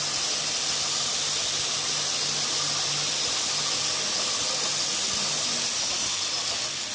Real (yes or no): yes